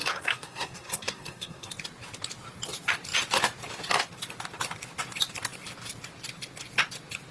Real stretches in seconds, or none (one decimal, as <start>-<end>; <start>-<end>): 1.7-7.3